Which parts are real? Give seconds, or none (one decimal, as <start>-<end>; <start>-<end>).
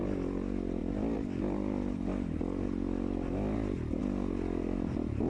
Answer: 0.0-5.3